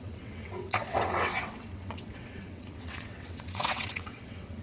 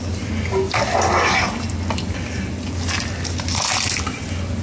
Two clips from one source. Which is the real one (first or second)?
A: second